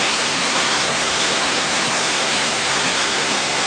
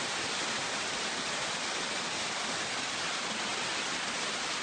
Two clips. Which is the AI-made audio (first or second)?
first